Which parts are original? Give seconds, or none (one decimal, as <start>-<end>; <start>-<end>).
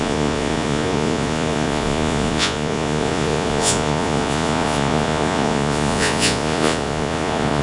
none